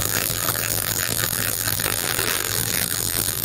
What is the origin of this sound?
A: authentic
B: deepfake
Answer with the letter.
B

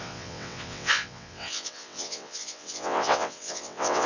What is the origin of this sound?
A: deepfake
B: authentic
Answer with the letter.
A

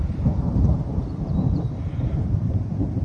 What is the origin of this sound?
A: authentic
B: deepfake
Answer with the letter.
B